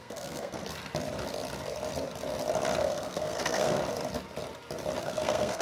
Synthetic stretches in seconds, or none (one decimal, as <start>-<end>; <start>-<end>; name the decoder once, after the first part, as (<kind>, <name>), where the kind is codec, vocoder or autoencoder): 0.0-0.6 (codec, SNAC); 2.8-3.8; 5.0-5.6